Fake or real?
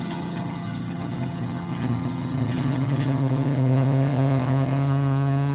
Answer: fake